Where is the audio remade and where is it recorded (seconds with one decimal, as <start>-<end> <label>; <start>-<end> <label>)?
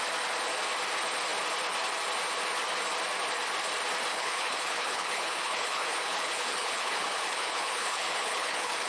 0.0-4.1 recorded; 4.1-8.9 remade